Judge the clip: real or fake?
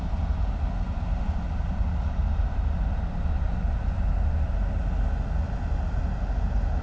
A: real